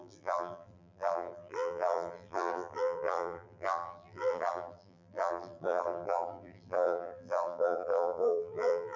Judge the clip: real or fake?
fake